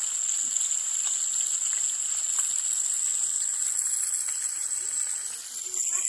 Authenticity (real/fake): real